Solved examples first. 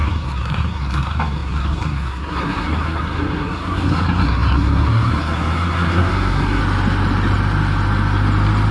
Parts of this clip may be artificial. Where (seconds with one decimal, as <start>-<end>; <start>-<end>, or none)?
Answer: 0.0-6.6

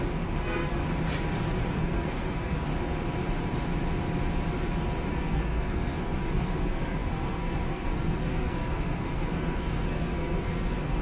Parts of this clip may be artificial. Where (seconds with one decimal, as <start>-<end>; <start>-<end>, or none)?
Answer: 0.0-0.8; 1.7-2.7; 5.1-11.0

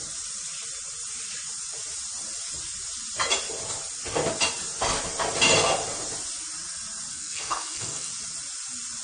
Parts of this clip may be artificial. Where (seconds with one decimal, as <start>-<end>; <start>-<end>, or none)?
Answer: 7.1-8.1